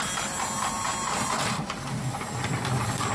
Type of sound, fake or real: real